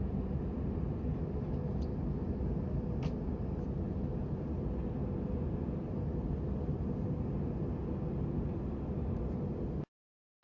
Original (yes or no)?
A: yes